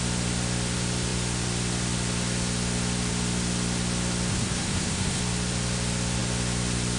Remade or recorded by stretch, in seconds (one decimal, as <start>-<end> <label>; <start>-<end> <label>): 0.0-4.3 recorded; 4.3-5.2 remade; 5.2-7.0 recorded